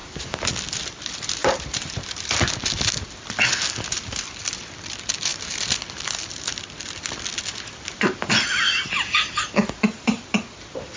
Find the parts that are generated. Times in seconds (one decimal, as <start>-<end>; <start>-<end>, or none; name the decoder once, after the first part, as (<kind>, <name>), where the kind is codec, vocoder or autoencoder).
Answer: 0.0-0.5 (vocoder, BigVGAN v2); 1.4-2.4